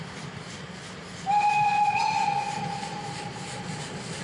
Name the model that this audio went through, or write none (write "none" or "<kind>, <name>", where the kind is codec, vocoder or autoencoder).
none